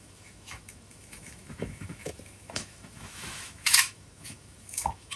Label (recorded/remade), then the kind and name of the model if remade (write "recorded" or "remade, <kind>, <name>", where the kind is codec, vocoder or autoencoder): remade, autoencoder, DAC-VAE